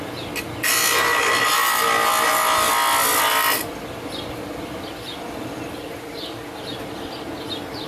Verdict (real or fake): real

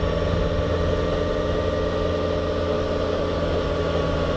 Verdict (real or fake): real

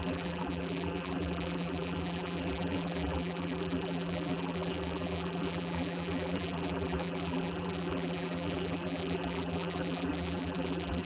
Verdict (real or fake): fake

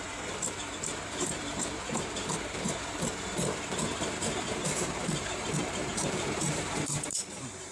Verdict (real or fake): fake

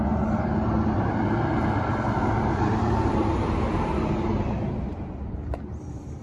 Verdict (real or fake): fake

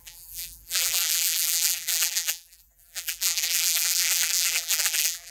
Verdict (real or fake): fake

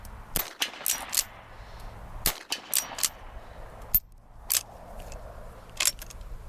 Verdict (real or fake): real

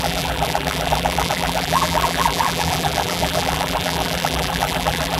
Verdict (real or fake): fake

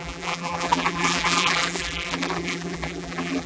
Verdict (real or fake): fake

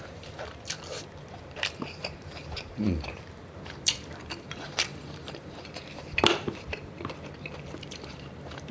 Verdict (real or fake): fake